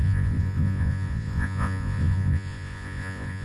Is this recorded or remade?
remade